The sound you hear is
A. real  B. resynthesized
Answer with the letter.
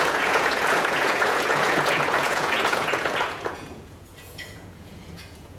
B